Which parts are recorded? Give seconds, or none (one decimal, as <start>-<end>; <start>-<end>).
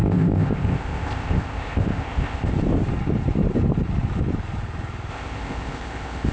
2.5-5.1